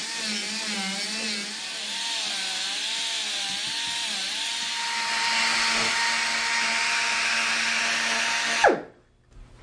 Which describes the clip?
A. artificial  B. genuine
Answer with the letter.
B